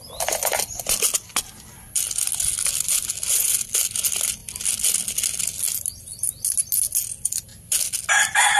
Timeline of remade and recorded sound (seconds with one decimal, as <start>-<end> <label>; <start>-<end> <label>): 0.0-8.6 recorded